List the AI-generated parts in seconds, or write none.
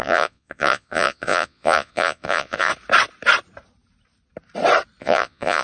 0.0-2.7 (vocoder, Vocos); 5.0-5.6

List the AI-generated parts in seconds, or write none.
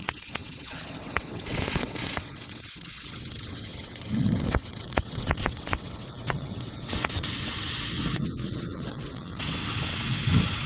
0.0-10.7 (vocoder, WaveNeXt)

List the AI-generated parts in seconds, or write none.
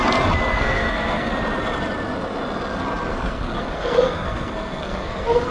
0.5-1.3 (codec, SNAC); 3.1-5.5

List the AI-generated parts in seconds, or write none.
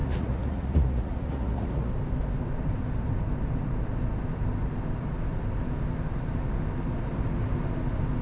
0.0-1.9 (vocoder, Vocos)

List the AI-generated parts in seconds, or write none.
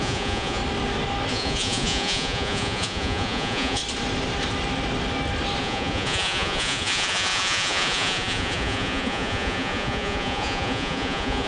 0.0-0.6 (vocoder, Vocos); 1.3-3.8; 5.6-11.5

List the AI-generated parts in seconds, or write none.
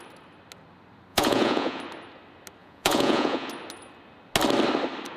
1.1-1.8 (vocoder, Vocos); 2.6-3.5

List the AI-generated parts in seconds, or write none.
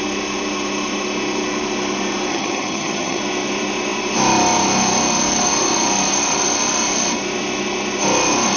2.3-3.2 (vocoder, HiFi-GAN)